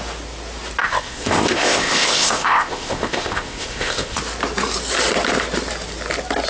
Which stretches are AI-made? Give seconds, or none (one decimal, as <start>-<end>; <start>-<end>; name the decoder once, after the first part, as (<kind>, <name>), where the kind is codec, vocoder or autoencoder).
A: 0.8-4.2 (codec, ZipCodec)